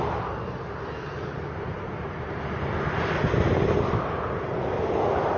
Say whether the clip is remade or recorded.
recorded